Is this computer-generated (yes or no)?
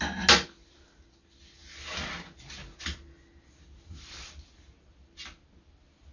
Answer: no